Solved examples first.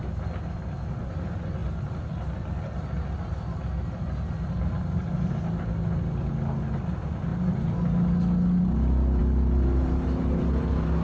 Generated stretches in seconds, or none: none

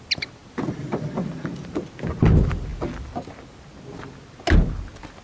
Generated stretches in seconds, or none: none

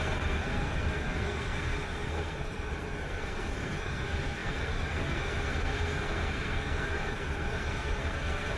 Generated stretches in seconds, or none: 0.0-8.6 (codec, SNAC)